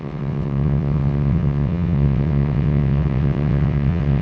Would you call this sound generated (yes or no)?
yes